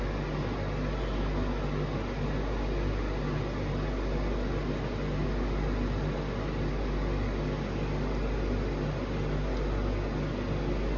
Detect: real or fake real